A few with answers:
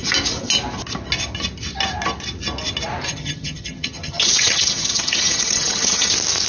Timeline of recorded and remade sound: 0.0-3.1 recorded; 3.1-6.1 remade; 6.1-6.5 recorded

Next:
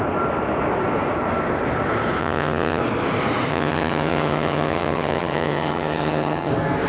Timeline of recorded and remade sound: 0.0-2.2 recorded; 2.2-2.8 remade; 2.8-3.5 recorded; 3.5-6.5 remade; 6.5-6.9 recorded

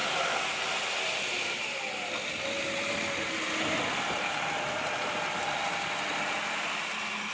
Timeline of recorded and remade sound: 0.0-7.3 recorded

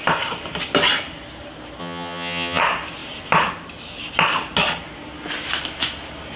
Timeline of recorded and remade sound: 0.0-1.8 recorded; 1.8-2.6 remade; 2.6-6.4 recorded